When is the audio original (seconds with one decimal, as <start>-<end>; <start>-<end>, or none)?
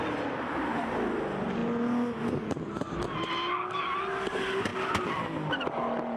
0.0-6.2